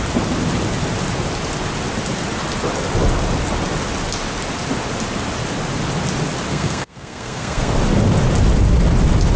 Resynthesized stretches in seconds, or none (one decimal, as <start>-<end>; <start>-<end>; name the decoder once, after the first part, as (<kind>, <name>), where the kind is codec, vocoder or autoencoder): 6.5-7.7 (codec, SNAC)